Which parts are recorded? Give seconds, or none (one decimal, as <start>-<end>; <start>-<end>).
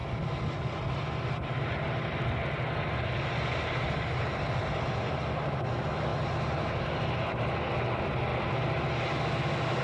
0.0-9.8